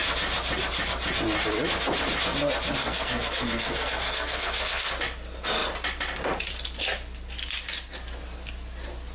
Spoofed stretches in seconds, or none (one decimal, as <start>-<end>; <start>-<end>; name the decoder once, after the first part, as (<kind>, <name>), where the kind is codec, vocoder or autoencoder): 2.8-4.9 (codec, SNAC)

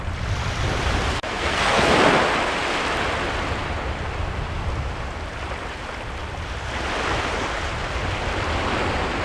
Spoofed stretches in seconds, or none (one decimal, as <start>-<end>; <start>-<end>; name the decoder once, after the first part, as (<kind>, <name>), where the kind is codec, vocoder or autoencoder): 1.1-1.9 (codec, SNAC)